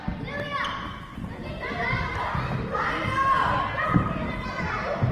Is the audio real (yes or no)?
yes